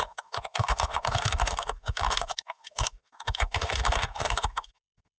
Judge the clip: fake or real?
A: fake